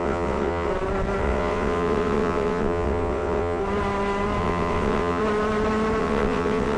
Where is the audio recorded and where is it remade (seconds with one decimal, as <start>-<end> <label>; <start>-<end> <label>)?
0.0-0.7 remade; 0.7-1.2 recorded; 1.2-3.6 remade; 3.6-4.4 recorded; 4.4-5.2 remade; 5.2-6.0 recorded; 6.0-6.8 remade